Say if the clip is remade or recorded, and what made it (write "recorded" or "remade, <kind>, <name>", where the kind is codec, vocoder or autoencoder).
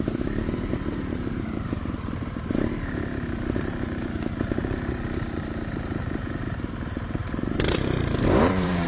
remade, vocoder, BigVGAN v2